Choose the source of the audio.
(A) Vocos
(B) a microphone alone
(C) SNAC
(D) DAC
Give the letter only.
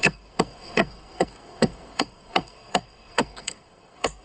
C